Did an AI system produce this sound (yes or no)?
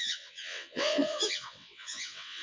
yes